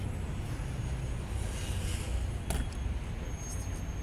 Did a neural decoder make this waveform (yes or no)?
no